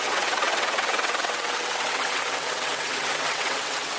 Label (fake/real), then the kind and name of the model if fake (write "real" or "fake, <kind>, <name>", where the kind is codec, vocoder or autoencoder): fake, vocoder, WaveNeXt